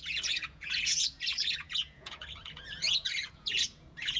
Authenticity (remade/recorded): remade